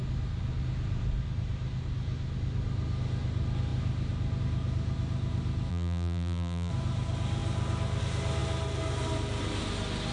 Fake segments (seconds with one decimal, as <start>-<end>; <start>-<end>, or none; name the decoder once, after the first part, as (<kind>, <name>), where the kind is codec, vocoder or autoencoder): 5.7-6.7 (vocoder, BigVGAN v2)